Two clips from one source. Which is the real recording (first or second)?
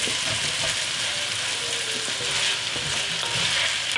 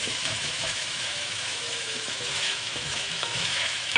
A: first